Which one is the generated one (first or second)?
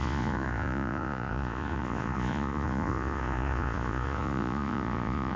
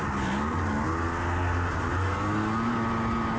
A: first